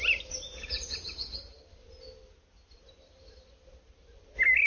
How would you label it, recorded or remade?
recorded